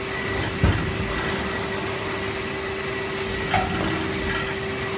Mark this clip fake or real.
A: real